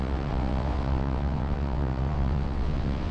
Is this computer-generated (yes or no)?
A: yes